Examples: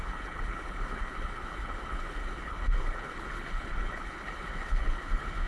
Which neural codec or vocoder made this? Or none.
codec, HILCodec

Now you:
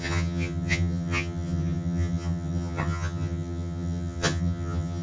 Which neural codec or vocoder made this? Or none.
vocoder, HiFi-GAN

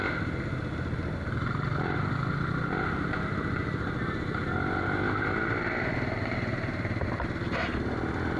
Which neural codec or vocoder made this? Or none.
none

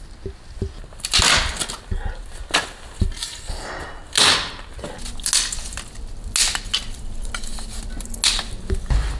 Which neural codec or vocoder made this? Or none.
none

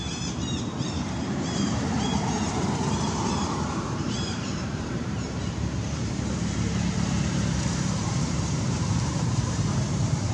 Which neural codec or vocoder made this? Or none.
vocoder, BigVGAN v2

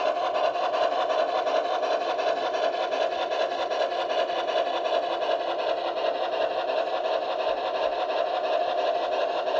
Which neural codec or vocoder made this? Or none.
none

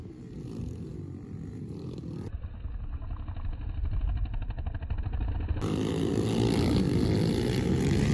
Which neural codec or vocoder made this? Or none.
none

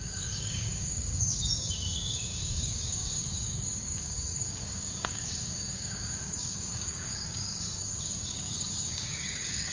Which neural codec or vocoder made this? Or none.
codec, DAC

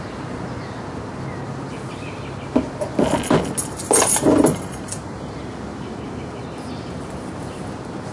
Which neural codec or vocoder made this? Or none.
none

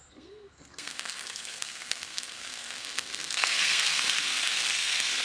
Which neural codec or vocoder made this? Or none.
codec, SNAC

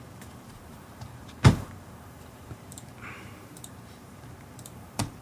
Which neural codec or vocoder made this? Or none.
vocoder, BigVGAN v2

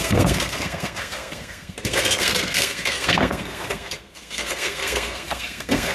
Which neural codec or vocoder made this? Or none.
codec, SNAC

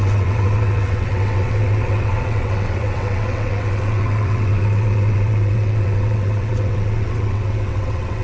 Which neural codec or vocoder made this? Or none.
vocoder, WaveNeXt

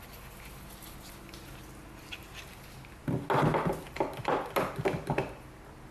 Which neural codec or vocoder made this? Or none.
none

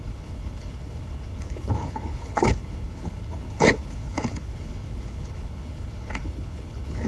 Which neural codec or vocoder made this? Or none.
codec, HILCodec